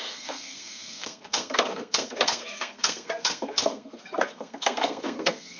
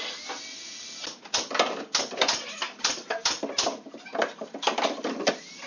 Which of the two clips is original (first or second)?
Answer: second